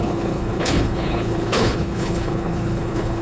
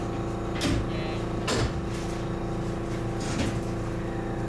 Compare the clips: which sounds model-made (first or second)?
first